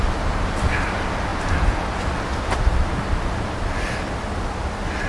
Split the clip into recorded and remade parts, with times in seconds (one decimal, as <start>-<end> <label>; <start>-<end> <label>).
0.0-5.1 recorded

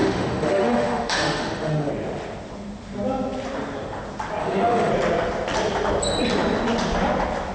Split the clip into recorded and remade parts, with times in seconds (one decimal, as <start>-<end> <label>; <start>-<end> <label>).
0.0-1.9 remade; 1.9-4.4 recorded; 4.4-4.9 remade; 4.9-7.5 recorded

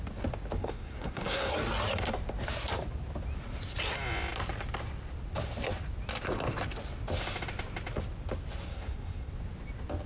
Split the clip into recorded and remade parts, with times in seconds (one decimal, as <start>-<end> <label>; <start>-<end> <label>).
0.0-0.6 recorded; 0.6-1.5 remade; 1.5-8.7 recorded; 8.7-9.3 remade; 9.3-10.1 recorded

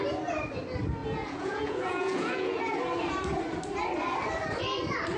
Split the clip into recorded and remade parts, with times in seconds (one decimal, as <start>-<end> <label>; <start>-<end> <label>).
0.0-1.0 recorded; 1.0-2.6 remade; 2.6-5.2 recorded

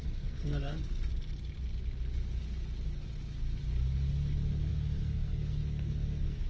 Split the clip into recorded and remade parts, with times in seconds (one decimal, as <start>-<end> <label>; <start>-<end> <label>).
0.0-0.8 remade; 0.8-4.7 recorded; 4.7-6.5 remade

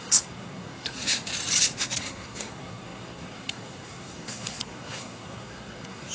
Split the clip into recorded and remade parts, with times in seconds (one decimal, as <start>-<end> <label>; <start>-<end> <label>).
0.0-1.3 remade; 1.3-1.8 recorded; 1.8-6.1 remade

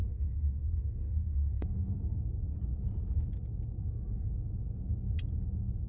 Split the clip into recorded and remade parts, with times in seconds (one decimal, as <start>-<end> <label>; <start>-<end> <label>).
0.0-2.2 remade; 2.2-3.8 recorded; 3.8-4.3 remade; 4.3-5.9 recorded